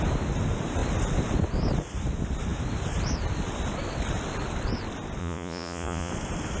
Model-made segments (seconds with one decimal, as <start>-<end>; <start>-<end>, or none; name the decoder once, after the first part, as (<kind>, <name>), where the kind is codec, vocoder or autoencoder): 5.2-6.1 (vocoder, Vocos)